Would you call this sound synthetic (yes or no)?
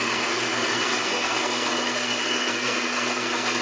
yes